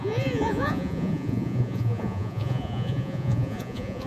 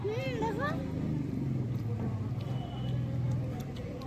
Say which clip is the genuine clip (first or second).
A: second